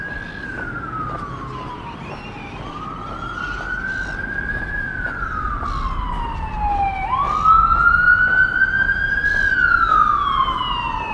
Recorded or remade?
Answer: recorded